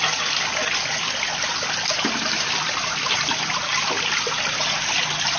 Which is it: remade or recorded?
recorded